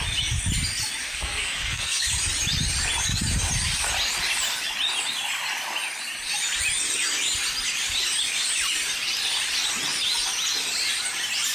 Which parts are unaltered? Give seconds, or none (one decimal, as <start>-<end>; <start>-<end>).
0.0-1.0; 2.0-11.5

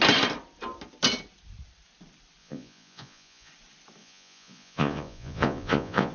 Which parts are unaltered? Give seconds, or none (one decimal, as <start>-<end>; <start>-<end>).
0.0-2.4; 3.5-4.0

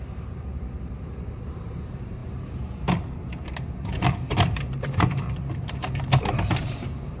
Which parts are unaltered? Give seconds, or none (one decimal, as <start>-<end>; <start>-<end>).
none

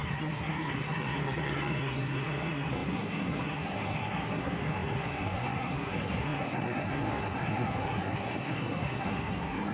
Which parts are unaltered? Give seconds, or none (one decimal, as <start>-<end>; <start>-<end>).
none

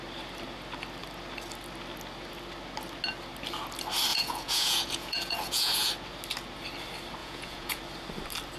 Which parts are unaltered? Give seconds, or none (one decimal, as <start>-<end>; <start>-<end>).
0.0-4.1; 5.9-7.2; 7.8-8.6

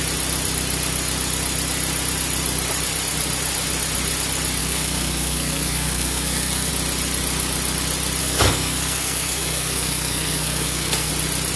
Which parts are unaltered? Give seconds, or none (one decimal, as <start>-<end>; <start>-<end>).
0.0-4.6; 6.7-8.2; 11.1-11.6

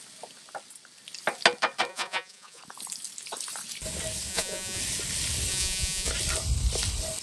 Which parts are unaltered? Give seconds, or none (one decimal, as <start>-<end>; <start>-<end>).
0.0-1.9; 2.6-4.3; 4.8-5.5; 6.1-7.2